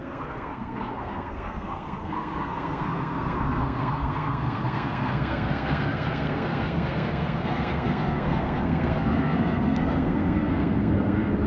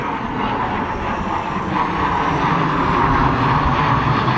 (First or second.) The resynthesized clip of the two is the first